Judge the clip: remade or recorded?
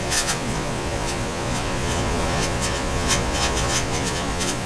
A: remade